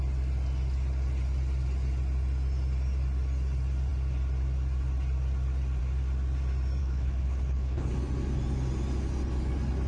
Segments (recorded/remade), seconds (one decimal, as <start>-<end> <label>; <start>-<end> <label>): 0.0-6.8 recorded; 6.8-7.9 remade; 7.9-9.9 recorded